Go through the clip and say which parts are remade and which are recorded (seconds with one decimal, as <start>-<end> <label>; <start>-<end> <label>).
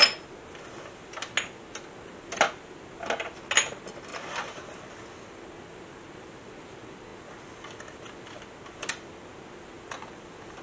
0.0-10.6 recorded